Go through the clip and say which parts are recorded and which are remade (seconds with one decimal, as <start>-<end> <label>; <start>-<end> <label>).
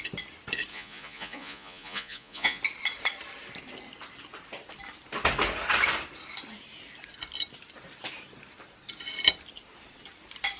0.0-0.7 recorded; 0.7-2.6 remade; 2.6-10.6 recorded